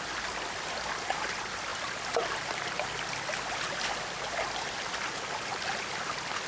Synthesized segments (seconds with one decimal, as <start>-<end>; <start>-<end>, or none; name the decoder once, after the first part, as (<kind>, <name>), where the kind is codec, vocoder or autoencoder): 1.7-4.8 (vocoder, BigVGAN v2); 5.5-6.1